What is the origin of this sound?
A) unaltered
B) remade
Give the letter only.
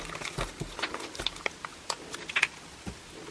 A